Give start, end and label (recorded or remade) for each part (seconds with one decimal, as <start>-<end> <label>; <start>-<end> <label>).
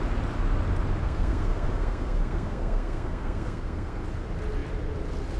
0.0-1.0 recorded; 1.0-4.0 remade; 4.0-5.4 recorded